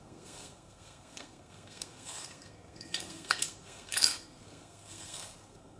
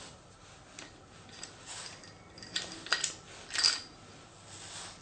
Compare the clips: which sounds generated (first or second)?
first